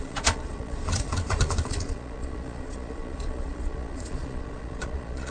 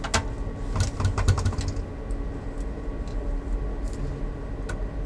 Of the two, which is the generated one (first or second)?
first